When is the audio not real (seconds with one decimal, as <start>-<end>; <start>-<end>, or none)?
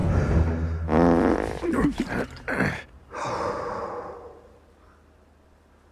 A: none